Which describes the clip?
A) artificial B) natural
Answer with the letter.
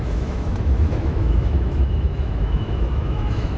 A